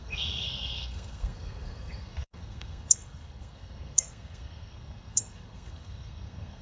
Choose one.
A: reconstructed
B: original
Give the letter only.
A